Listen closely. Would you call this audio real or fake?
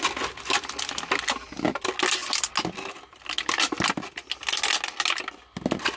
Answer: real